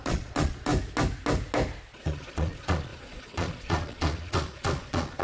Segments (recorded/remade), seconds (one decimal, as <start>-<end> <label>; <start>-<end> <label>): 0.0-0.7 remade; 0.7-1.9 recorded; 1.9-5.2 remade